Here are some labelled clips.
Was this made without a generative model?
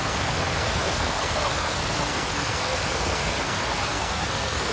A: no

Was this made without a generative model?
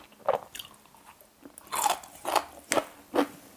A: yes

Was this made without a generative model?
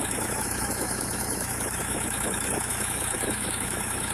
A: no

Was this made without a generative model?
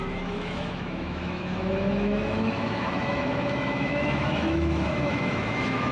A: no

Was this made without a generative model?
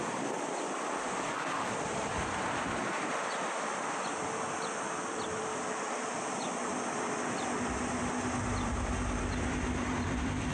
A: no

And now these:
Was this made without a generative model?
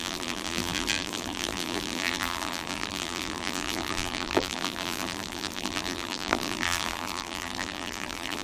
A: no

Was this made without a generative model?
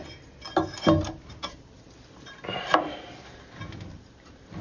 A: yes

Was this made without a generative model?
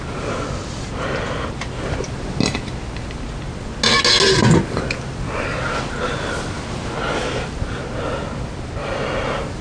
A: yes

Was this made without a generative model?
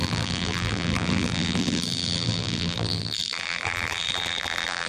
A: no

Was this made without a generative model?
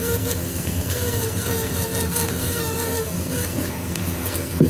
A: no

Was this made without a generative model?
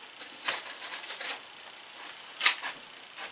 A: yes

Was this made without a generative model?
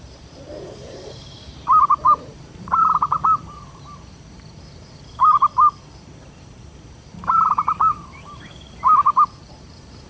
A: no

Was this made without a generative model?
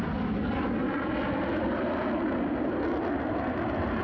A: yes